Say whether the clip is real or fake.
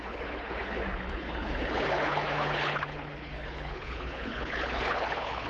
fake